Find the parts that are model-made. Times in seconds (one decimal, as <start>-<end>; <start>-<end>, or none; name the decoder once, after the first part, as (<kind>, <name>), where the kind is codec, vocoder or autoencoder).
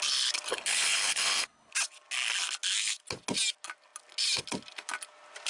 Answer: 0.5-1.7 (codec, HILCodec)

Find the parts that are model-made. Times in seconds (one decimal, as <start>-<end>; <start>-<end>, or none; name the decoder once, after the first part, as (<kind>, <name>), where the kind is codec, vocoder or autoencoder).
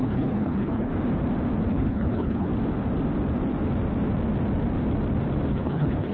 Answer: 0.0-0.9 (codec, HILCodec); 1.7-2.5; 5.5-6.1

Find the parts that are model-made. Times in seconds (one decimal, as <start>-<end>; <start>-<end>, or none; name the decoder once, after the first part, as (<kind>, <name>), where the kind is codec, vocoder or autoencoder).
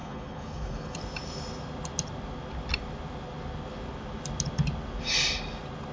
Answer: 0.0-1.0 (codec, HILCodec)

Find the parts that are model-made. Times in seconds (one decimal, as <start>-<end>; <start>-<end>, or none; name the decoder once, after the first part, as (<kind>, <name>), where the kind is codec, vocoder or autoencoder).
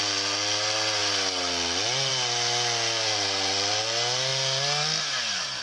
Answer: none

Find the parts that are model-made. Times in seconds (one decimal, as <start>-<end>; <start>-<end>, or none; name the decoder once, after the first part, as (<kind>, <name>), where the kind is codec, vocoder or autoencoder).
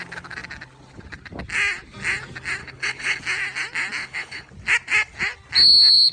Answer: 2.6-3.2 (codec, HILCodec); 4.0-4.5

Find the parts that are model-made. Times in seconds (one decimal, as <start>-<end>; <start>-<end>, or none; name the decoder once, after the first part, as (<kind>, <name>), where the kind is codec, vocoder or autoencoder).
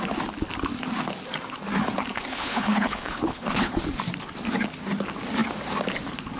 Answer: 2.1-3.7 (codec, HILCodec)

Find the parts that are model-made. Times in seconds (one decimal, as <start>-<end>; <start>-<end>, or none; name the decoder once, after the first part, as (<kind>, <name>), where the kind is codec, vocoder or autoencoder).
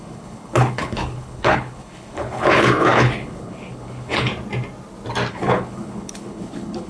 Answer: 0.0-4.3 (codec, HILCodec); 5.3-6.9